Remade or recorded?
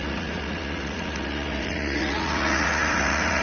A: remade